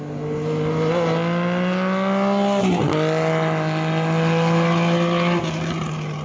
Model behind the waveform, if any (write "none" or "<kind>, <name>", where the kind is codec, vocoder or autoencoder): none